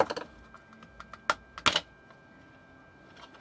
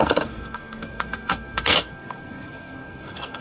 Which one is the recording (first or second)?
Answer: first